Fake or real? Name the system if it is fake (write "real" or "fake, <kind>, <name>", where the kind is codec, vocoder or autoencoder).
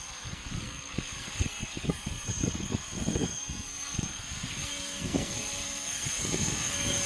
fake, codec, SNAC